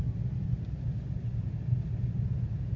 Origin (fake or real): real